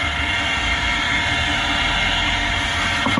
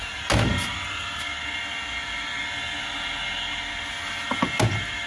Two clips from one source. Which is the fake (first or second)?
first